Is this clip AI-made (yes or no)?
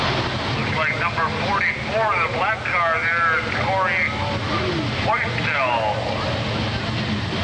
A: no